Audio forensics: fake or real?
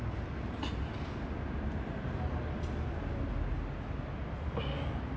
real